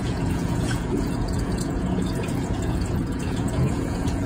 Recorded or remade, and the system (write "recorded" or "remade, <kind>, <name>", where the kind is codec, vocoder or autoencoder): remade, vocoder, Vocos